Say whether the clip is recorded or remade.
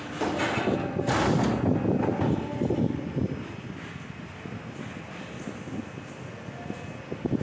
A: recorded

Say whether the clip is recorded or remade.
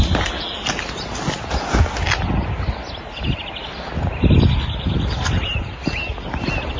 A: recorded